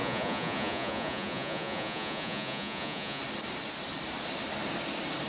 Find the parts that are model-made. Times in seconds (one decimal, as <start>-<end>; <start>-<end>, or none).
0.0-3.2

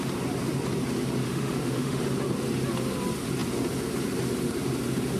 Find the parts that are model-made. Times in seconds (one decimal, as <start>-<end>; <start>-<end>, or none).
1.2-2.0